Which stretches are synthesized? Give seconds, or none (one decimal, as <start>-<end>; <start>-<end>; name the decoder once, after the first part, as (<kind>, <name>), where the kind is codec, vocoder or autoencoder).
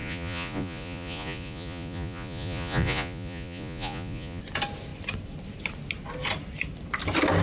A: 0.0-4.4 (vocoder, Vocos)